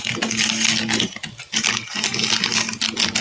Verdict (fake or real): real